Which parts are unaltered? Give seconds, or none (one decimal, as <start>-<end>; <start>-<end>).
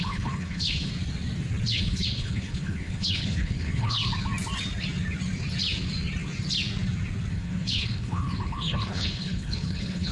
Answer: 0.9-1.7; 4.0-7.3